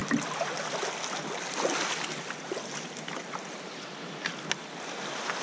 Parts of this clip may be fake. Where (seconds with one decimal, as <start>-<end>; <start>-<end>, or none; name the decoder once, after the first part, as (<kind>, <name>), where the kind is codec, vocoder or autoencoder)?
none